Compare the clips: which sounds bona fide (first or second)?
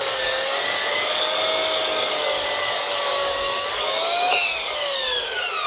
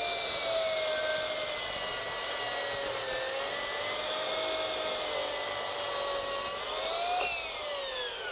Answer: second